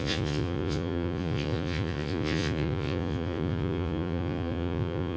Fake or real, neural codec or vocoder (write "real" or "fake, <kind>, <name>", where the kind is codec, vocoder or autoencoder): fake, vocoder, Vocos